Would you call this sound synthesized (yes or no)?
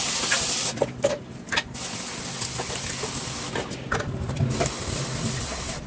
no